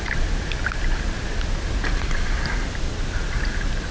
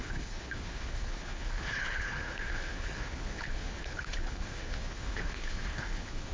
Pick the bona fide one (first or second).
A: first